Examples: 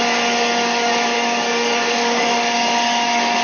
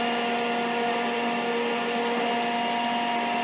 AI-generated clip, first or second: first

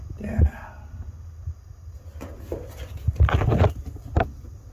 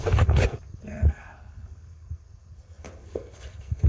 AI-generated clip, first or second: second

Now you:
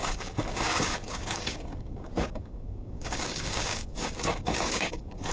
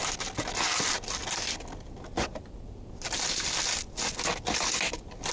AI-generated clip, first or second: first